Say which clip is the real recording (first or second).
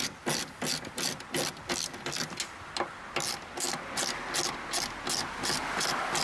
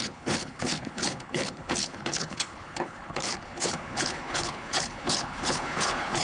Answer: first